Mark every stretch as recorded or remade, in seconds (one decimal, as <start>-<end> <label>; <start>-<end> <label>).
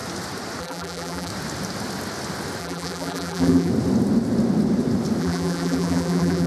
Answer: 0.0-0.6 recorded; 0.6-1.3 remade; 1.3-2.6 recorded; 2.6-3.7 remade; 3.7-5.2 recorded; 5.2-6.5 remade